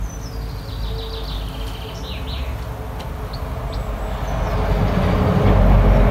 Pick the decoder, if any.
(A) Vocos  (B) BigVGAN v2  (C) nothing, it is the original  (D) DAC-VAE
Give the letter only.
C